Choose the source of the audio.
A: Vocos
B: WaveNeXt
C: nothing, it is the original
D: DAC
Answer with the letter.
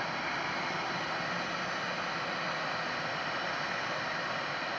C